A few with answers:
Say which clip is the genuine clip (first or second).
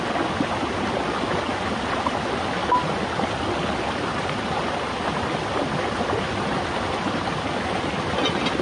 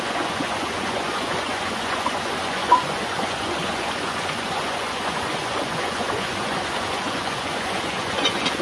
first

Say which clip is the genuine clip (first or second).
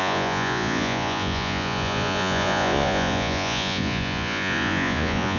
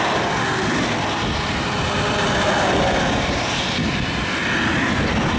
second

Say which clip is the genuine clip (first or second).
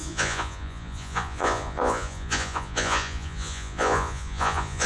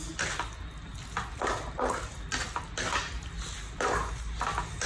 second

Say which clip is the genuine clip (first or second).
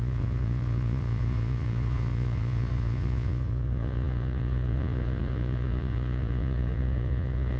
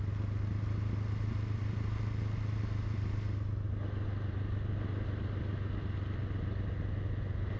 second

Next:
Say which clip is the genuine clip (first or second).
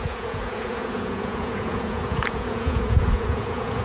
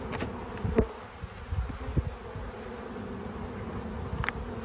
second